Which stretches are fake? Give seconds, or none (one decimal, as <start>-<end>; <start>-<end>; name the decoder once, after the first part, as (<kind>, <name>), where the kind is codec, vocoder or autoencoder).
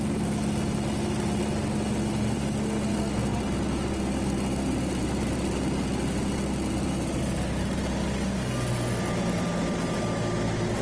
none